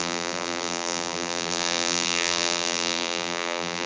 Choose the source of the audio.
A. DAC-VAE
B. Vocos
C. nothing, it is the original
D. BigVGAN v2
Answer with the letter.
D